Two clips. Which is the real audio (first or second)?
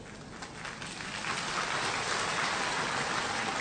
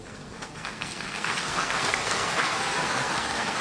first